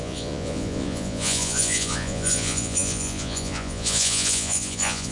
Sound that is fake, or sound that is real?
fake